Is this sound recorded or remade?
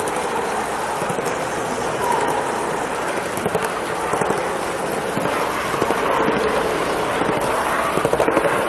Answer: recorded